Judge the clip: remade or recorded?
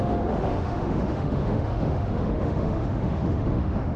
remade